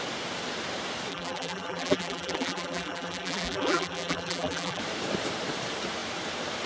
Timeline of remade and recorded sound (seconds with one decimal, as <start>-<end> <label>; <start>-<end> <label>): 0.0-1.1 recorded; 1.1-4.8 remade; 4.8-6.7 recorded